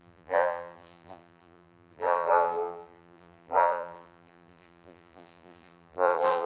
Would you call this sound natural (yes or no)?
no